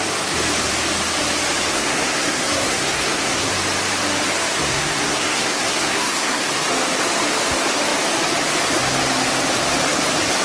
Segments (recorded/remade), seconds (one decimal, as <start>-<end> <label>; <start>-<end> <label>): 0.0-1.7 recorded; 1.7-3.5 remade; 3.5-4.7 recorded; 4.7-6.5 remade; 6.5-10.4 recorded